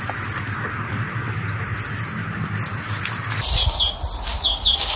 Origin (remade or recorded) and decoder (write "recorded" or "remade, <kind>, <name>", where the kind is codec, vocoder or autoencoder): recorded